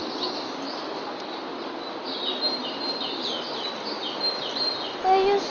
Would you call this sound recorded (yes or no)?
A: yes